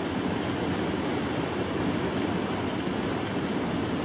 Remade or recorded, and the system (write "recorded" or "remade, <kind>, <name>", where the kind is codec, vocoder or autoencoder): recorded